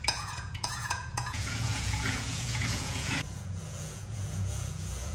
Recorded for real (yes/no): no